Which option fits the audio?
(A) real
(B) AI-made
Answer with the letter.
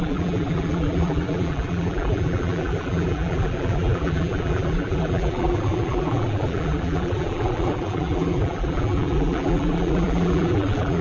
B